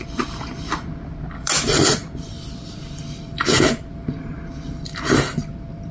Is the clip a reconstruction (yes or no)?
yes